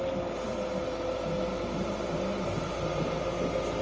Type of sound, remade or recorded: recorded